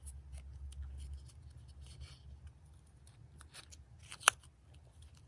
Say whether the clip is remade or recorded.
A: recorded